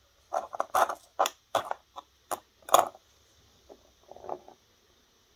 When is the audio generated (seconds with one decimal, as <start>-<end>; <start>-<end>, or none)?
none